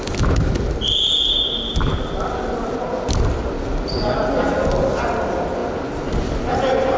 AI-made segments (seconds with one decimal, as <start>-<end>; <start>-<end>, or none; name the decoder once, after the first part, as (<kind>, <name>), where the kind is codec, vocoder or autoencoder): none